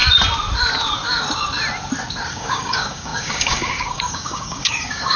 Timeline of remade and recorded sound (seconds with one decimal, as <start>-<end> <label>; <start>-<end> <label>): 0.0-2.3 recorded; 2.3-5.2 remade